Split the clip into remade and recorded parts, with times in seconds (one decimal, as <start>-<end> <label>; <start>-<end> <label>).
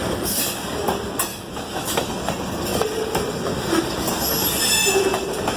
0.0-1.3 recorded; 1.3-2.1 remade; 2.1-5.6 recorded